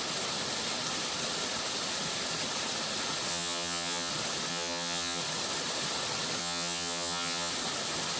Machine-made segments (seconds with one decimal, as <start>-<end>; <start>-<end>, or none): 3.3-4.1; 4.5-5.2; 6.4-7.5